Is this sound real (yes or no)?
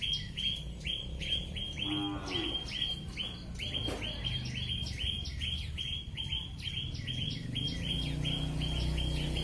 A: yes